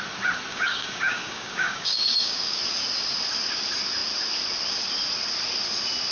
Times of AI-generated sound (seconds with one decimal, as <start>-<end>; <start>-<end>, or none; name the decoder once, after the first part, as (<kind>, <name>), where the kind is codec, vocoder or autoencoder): 0.5-2.6 (codec, DAC)